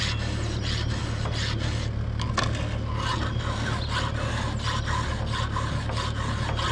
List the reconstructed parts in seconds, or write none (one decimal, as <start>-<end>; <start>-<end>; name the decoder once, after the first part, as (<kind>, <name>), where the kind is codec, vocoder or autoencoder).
none